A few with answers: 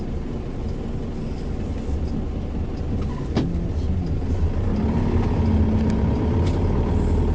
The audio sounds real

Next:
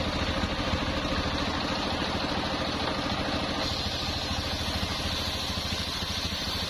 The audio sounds real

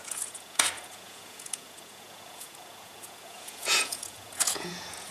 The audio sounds fake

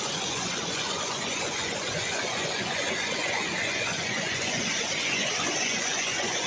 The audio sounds fake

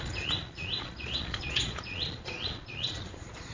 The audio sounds fake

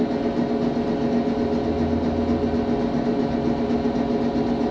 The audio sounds real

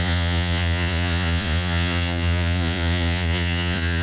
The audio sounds fake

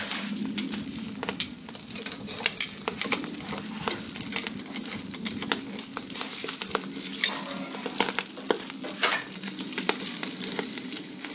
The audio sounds real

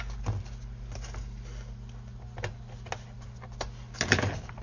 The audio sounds real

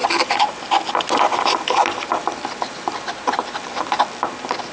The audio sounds real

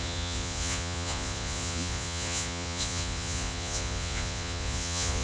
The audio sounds fake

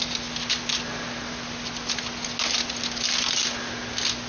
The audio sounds real